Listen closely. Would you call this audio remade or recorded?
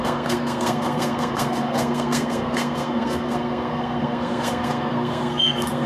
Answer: remade